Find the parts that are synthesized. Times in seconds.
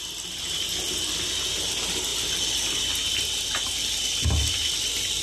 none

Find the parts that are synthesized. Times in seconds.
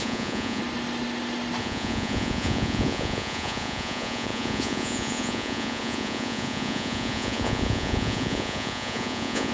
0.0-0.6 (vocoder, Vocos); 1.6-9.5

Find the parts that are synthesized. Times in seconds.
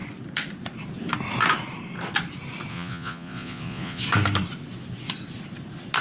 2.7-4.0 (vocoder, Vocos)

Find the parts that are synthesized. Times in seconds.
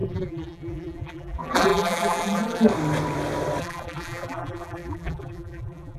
0.0-2.7 (vocoder, BigVGAN v2); 3.6-6.0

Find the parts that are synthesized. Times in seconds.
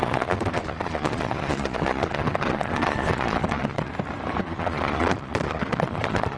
0.0-3.9 (vocoder, Vocos); 4.4-6.4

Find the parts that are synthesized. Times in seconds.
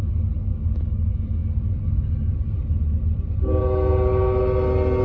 none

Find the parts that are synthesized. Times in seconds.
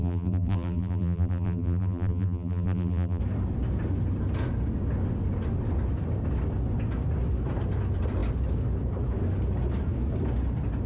0.0-3.2 (vocoder, BigVGAN v2)